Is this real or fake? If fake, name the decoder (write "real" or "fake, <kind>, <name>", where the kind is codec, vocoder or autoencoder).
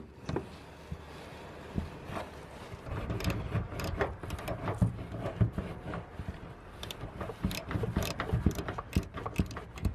real